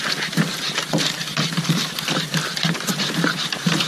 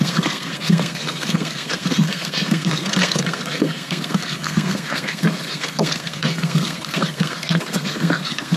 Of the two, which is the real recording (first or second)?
first